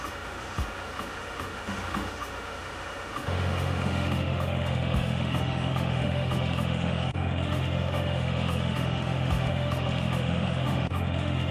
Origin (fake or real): fake